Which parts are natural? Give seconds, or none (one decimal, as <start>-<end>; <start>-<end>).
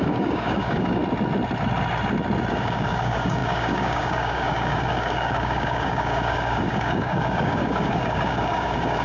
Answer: 1.0-2.5